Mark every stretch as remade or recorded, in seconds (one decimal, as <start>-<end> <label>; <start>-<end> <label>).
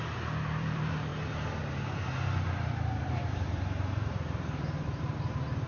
0.0-1.1 remade; 1.1-1.6 recorded; 1.6-2.0 remade; 2.0-3.0 recorded; 3.0-5.7 remade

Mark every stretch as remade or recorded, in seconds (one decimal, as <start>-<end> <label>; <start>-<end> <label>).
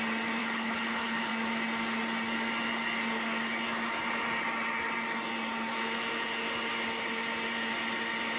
0.0-0.4 recorded; 0.4-1.3 remade; 1.3-8.4 recorded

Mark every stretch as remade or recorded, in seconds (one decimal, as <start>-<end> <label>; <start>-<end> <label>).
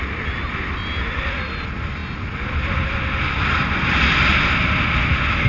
0.0-5.5 recorded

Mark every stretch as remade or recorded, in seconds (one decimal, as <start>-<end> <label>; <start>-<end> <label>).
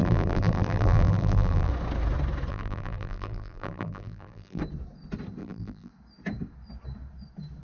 0.0-1.7 remade; 1.7-2.5 recorded; 2.5-4.6 remade; 4.6-5.4 recorded; 5.4-5.9 remade; 5.9-7.6 recorded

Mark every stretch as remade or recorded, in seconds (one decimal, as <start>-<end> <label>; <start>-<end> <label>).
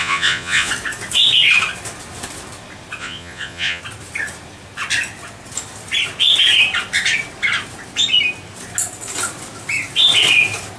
0.0-0.7 remade; 0.7-3.0 recorded; 3.0-3.8 remade; 3.8-10.8 recorded